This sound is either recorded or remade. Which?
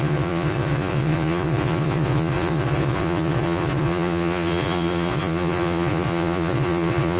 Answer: remade